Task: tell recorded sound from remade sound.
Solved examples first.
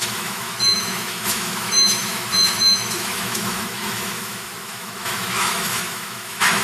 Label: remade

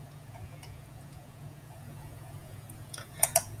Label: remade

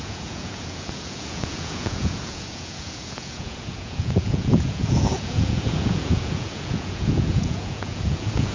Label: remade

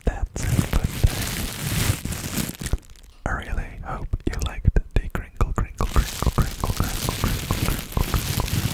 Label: recorded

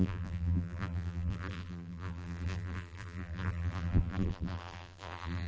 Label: remade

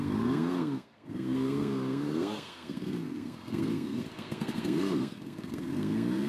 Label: remade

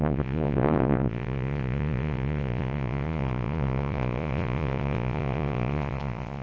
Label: remade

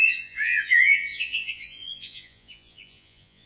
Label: remade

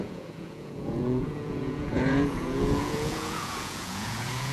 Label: remade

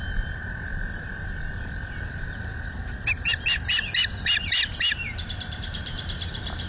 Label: recorded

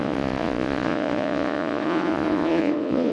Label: remade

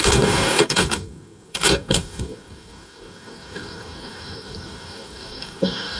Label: remade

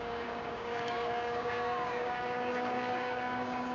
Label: remade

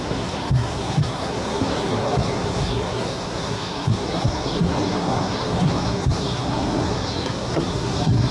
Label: remade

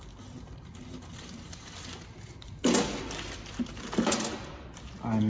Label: recorded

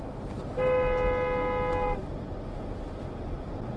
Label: recorded